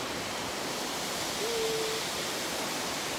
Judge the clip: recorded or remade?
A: recorded